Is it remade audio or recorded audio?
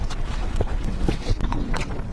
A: remade